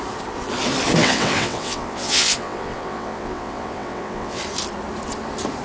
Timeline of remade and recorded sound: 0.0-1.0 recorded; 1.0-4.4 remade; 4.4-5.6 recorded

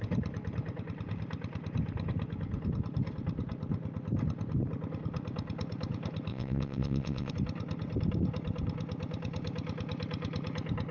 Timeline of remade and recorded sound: 0.0-6.3 recorded; 6.3-7.3 remade; 7.3-10.9 recorded

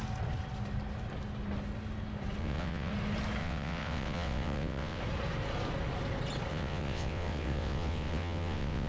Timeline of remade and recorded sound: 0.0-2.4 recorded; 2.4-2.9 remade; 2.9-3.4 recorded; 3.4-5.0 remade; 5.0-6.5 recorded; 6.5-8.9 remade

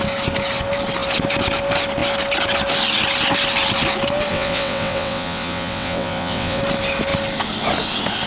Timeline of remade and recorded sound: 0.0-4.3 recorded; 4.3-6.6 remade; 6.6-8.3 recorded

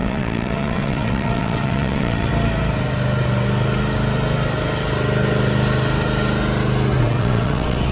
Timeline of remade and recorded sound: 0.0-2.3 remade; 2.3-7.0 recorded; 7.0-7.9 remade